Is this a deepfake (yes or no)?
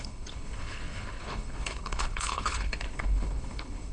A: yes